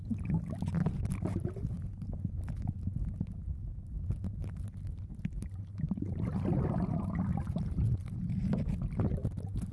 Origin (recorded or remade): recorded